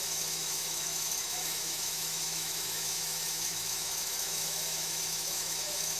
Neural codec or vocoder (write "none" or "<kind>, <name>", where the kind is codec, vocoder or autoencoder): autoencoder, DAC-VAE